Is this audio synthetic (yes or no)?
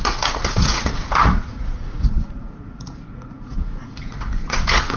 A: yes